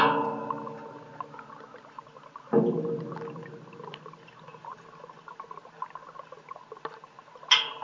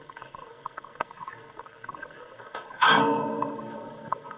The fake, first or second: second